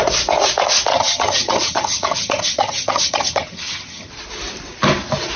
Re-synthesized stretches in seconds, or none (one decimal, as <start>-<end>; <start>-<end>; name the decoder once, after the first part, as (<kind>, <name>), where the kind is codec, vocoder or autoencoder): 0.9-4.1 (vocoder, HiFi-GAN)